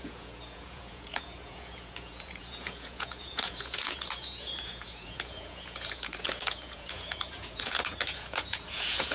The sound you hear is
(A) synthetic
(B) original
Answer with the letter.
A